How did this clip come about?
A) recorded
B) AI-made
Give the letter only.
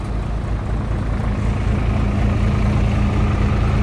A